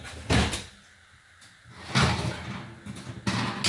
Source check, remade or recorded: recorded